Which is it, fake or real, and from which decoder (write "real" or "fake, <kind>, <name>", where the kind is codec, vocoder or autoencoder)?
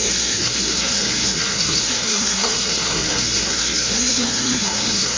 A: fake, codec, SNAC